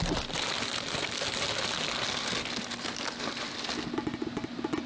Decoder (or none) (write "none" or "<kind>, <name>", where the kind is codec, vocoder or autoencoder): none